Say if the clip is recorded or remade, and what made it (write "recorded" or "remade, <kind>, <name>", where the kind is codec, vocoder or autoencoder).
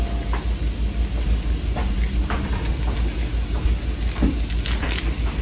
recorded